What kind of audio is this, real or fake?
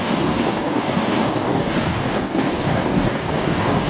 fake